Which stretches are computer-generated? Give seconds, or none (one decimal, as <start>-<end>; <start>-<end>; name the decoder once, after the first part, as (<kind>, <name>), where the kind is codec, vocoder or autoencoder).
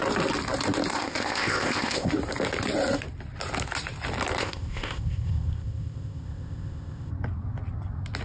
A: 0.9-2.1 (codec, ZipCodec); 4.4-7.1